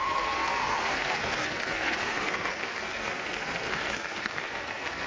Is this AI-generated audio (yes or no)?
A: yes